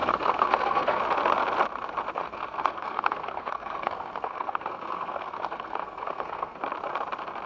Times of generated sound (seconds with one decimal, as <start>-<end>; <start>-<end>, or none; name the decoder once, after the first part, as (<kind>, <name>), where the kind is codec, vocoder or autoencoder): 0.0-1.0 (codec, SNAC); 2.1-6.6